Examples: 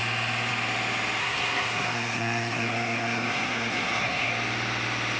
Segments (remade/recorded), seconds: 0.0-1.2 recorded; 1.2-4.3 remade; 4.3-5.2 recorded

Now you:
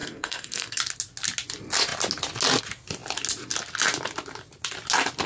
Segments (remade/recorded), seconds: 0.0-0.8 remade; 0.8-5.3 recorded

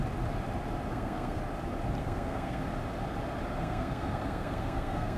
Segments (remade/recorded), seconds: 0.0-0.9 recorded; 0.9-1.4 remade; 1.4-2.0 recorded; 2.0-2.6 remade; 2.6-3.6 recorded; 3.6-5.2 remade

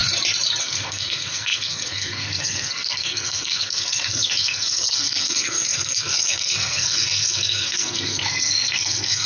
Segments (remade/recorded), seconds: 0.0-0.6 recorded; 0.6-9.3 remade